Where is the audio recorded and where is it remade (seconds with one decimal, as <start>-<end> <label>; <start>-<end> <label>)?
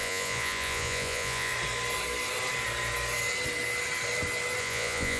0.0-1.5 remade; 1.5-4.6 recorded; 4.6-5.2 remade